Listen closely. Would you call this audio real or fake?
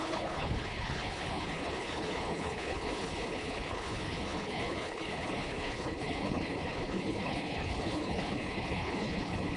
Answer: fake